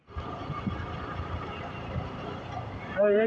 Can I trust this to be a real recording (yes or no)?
no